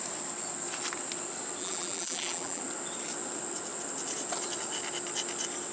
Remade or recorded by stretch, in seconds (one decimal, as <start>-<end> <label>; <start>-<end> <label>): 0.0-1.6 recorded; 1.6-2.6 remade; 2.6-5.7 recorded